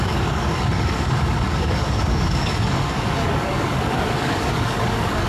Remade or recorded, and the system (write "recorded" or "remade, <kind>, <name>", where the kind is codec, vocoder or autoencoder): remade, codec, DAC